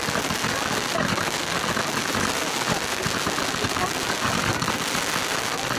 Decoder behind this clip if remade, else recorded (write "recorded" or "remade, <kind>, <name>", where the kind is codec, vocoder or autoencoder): recorded